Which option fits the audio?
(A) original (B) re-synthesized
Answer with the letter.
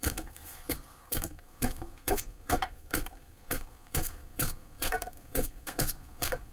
B